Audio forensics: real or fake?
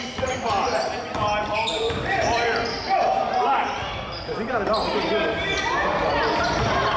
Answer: fake